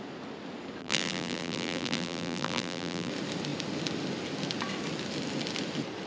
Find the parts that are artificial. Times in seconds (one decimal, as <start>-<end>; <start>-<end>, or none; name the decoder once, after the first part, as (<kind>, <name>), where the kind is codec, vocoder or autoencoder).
0.8-3.1 (vocoder, BigVGAN v2)